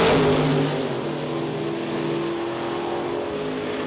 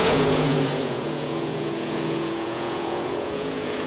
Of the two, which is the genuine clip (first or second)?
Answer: first